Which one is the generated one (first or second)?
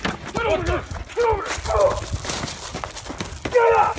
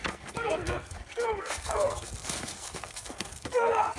second